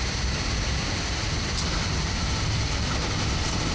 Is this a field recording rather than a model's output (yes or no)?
no